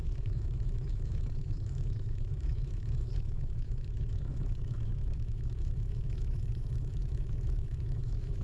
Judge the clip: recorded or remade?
remade